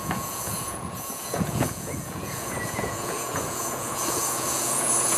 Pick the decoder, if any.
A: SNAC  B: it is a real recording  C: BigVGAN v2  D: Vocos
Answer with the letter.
D